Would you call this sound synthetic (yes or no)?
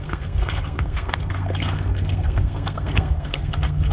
yes